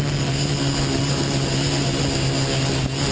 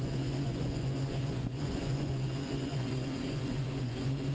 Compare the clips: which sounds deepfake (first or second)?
second